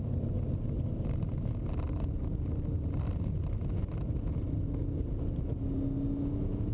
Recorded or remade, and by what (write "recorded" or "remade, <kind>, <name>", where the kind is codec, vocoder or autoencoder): recorded